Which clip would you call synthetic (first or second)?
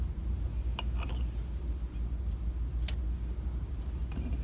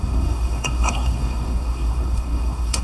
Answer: second